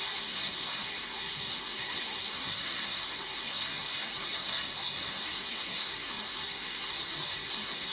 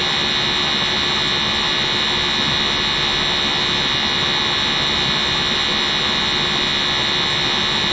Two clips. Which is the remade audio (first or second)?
first